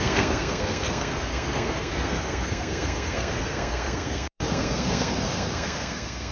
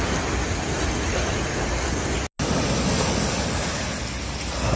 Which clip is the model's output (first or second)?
first